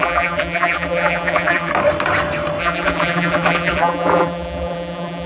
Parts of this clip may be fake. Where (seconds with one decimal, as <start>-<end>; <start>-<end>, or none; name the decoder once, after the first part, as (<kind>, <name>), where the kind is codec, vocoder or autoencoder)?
0.0-1.7 (vocoder, BigVGAN v2); 2.6-5.3